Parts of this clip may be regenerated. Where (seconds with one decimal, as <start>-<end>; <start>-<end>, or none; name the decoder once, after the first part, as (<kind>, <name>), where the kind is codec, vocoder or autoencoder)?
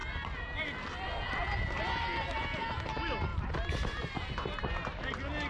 none